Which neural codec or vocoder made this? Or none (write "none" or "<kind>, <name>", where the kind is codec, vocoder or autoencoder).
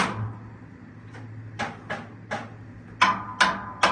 none